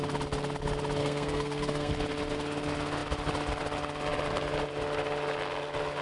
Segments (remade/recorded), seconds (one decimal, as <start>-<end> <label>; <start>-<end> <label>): 0.0-1.0 recorded; 1.0-1.9 remade; 1.9-6.0 recorded